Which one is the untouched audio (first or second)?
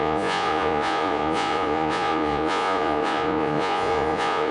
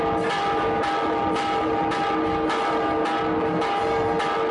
second